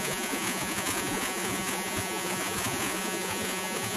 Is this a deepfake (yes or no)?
yes